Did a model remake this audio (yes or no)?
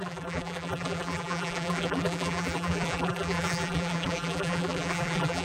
yes